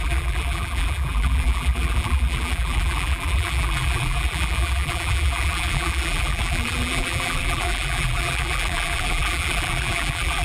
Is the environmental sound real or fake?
fake